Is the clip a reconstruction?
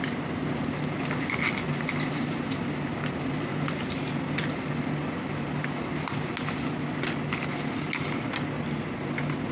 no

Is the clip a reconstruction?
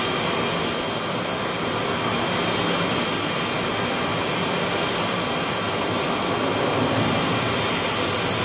no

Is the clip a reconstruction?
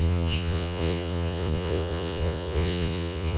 yes